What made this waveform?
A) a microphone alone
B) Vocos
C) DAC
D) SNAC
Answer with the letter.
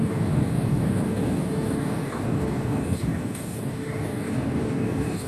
C